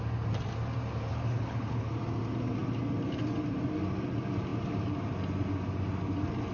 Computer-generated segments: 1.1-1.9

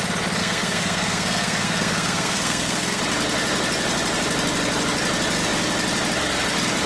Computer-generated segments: 0.4-3.0